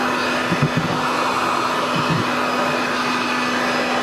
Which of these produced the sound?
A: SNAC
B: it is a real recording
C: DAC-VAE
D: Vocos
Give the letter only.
B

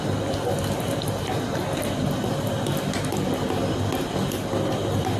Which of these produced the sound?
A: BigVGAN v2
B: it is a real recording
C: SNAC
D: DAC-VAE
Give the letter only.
B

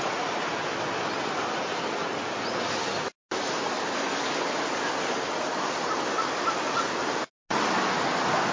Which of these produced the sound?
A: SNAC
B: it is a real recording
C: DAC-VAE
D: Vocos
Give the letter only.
B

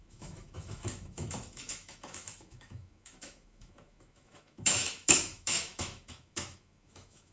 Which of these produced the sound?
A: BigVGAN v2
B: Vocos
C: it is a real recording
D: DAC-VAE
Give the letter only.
D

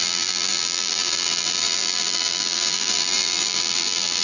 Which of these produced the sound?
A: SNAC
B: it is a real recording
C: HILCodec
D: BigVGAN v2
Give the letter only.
D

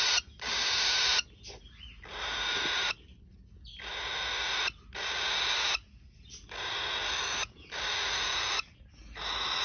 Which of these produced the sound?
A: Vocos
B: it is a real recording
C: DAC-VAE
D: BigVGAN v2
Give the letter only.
B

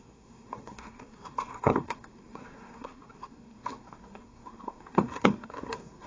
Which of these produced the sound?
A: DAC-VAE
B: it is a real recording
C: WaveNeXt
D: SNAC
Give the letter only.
D